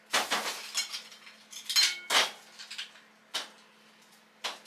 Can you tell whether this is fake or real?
real